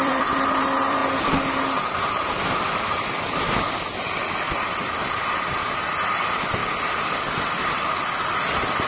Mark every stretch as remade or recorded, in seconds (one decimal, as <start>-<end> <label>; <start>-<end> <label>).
0.0-1.0 remade; 1.0-5.3 recorded; 5.3-8.9 remade